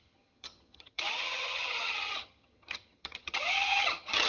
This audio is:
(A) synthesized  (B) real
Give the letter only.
A